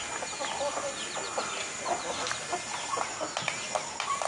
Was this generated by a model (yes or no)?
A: no